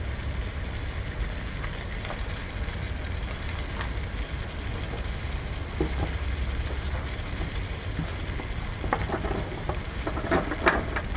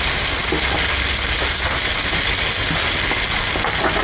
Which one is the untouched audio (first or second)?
second